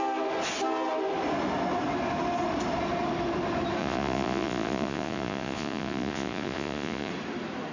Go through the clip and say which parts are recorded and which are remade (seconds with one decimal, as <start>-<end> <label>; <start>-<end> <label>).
0.0-3.8 recorded; 3.8-7.1 remade; 7.1-7.7 recorded